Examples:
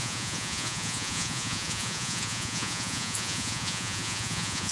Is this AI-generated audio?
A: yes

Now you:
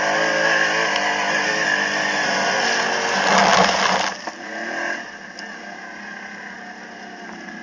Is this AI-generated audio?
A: no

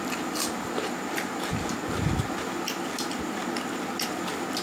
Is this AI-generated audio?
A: no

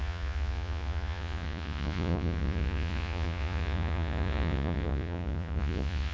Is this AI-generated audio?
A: yes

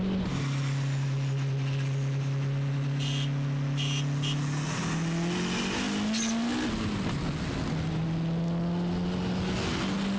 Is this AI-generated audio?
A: no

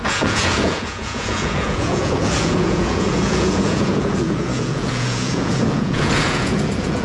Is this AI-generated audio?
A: yes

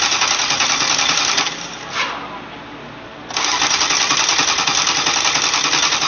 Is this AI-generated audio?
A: no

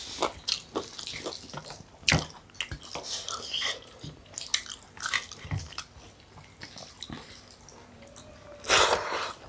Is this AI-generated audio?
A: no